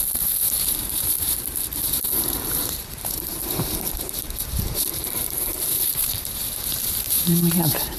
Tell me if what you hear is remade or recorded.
remade